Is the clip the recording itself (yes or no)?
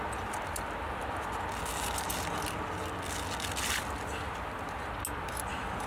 yes